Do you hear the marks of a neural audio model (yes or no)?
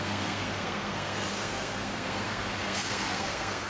yes